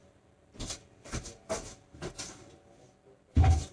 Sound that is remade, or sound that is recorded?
recorded